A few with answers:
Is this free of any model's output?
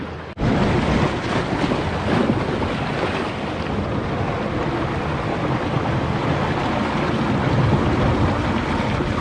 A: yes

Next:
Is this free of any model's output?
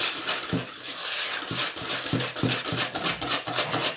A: yes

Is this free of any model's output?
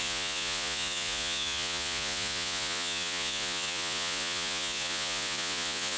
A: no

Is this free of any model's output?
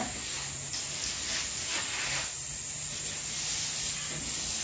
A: yes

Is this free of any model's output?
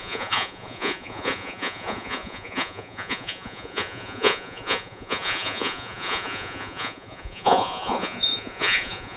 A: no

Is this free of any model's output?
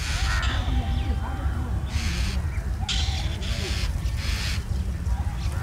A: yes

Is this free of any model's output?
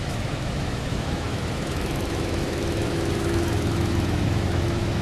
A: no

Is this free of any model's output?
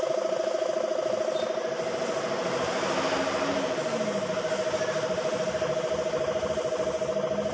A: yes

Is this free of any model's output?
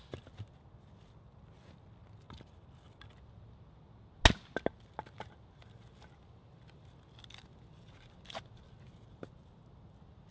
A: yes